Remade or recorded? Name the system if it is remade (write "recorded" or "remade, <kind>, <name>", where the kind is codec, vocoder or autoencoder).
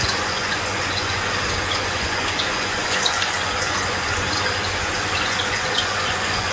remade, vocoder, Vocos